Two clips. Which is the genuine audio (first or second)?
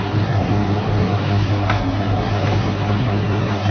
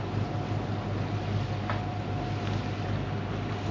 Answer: second